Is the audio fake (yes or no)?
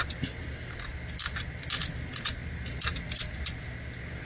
no